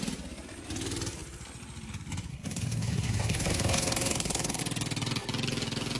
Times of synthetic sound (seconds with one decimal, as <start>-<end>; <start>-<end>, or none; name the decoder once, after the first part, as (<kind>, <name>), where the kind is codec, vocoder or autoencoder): 2.3-4.6 (codec, SNAC)